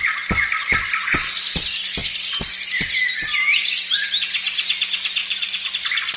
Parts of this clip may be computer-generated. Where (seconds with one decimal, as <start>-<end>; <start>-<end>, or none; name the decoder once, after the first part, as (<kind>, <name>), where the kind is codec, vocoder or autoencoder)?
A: 5.2-5.7 (vocoder, Vocos)